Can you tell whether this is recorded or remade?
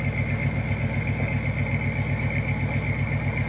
recorded